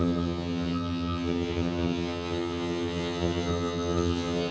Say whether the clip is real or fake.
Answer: fake